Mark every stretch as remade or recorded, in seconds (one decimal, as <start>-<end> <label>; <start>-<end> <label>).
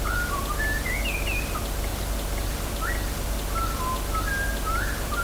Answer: 0.0-5.2 recorded